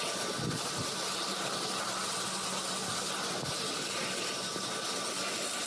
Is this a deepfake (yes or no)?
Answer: no